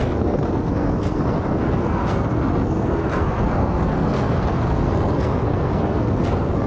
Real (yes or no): no